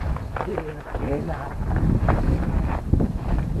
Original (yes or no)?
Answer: yes